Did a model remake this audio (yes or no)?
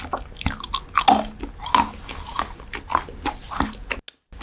no